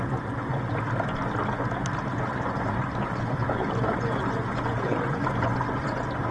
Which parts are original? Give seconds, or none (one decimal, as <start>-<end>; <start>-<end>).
0.5-2.3